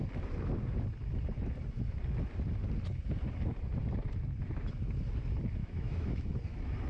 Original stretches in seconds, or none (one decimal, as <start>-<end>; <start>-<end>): 0.0-5.6; 6.3-6.9